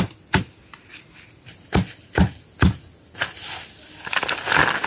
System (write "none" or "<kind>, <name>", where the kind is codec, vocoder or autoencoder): none